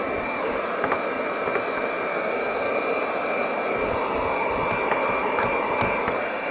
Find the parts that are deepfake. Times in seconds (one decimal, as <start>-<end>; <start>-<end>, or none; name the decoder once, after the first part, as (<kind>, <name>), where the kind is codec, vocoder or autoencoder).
2.1-2.7 (codec, SNAC)